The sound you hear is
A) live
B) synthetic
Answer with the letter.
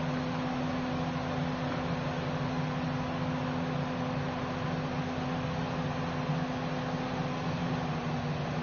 A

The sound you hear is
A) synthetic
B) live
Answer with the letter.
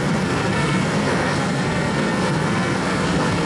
A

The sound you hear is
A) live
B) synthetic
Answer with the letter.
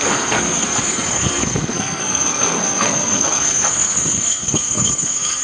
B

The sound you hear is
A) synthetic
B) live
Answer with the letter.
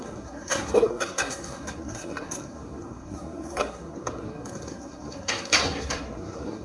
A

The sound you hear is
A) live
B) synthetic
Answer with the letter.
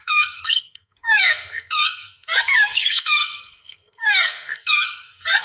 B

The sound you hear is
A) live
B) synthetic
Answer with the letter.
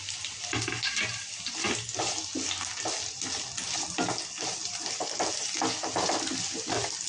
A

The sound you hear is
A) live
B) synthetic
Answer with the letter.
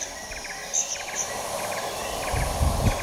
A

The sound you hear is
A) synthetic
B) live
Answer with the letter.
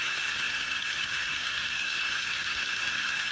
A